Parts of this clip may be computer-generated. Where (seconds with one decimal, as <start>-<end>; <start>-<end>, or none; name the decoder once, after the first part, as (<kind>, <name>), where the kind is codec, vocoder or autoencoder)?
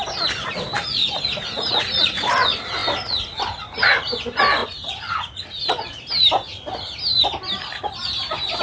1.0-2.2 (vocoder, Vocos); 4.6-6.0